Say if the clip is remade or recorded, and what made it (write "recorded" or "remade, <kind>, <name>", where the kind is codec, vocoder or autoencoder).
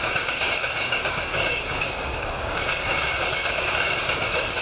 remade, codec, DAC